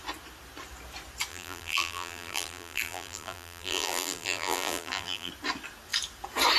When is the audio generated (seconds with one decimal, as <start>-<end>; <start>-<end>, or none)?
1.3-5.3